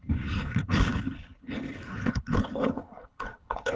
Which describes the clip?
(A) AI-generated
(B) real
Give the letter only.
A